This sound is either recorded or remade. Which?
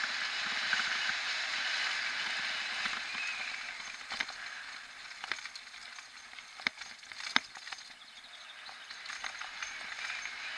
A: recorded